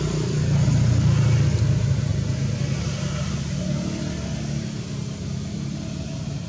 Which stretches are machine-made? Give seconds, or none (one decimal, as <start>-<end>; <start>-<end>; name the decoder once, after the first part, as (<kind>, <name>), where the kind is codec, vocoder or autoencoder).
none